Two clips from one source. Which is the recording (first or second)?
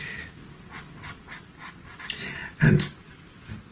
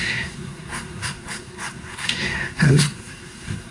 first